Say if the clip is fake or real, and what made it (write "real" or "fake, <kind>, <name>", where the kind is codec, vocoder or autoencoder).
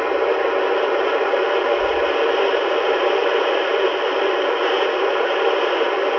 real